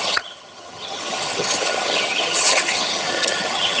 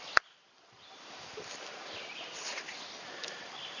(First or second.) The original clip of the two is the second